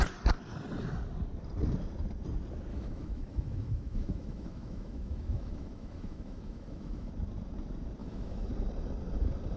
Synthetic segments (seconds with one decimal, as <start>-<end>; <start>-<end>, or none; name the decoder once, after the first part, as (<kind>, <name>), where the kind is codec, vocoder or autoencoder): 2.7-7.1 (autoencoder, DAC-VAE); 8.0-8.5